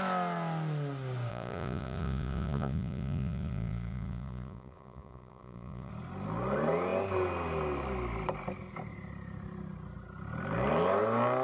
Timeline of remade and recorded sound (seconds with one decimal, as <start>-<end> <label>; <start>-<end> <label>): 0.0-1.3 recorded; 1.3-5.9 remade; 5.9-11.4 recorded